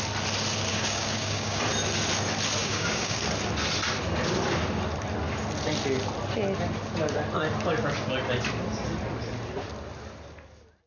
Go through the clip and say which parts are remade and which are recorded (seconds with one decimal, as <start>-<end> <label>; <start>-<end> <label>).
0.0-0.7 recorded; 0.7-1.6 remade; 1.6-2.6 recorded; 2.6-3.2 remade; 3.2-10.9 recorded